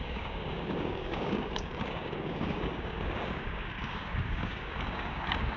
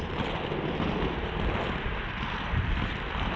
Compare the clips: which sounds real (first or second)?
second